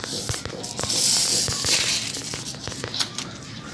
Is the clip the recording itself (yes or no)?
yes